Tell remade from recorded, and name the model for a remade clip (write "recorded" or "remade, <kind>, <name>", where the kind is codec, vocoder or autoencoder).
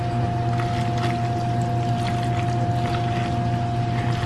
recorded